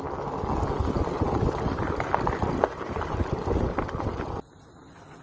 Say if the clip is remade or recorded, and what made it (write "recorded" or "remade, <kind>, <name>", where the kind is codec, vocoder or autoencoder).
recorded